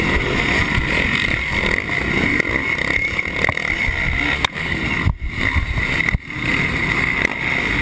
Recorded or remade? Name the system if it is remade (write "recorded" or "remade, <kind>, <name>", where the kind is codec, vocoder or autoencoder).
recorded